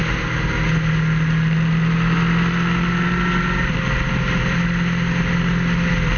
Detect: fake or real real